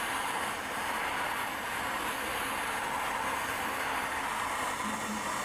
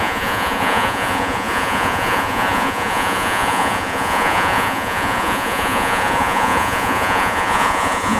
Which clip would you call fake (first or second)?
second